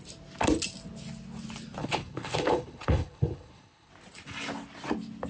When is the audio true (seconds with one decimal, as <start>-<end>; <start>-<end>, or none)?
0.0-1.8; 3.9-5.3